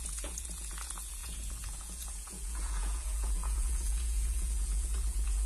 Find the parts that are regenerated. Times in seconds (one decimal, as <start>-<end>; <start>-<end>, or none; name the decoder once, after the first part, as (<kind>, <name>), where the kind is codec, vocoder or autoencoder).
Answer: 0.0-5.5 (vocoder, Vocos)